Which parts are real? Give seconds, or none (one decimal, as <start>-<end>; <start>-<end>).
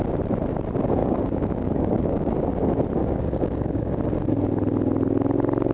0.0-1.0; 2.3-3.0; 4.0-5.7